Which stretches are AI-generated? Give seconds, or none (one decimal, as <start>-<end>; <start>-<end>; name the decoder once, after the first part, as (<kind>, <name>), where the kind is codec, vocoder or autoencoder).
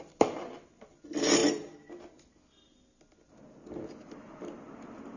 none